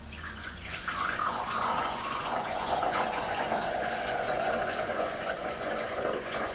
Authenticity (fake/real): fake